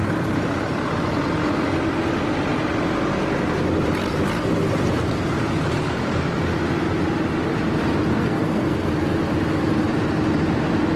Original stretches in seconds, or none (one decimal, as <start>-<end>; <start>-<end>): 0.0-8.1; 8.9-11.0